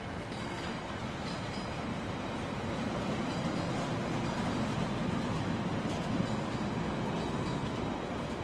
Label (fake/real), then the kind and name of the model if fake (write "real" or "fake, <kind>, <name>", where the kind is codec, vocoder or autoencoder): real